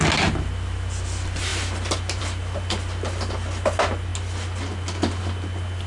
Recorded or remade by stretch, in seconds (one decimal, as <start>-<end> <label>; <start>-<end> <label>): 0.0-5.9 recorded